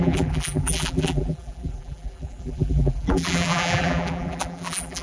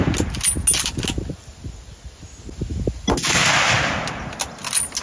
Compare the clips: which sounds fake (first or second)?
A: first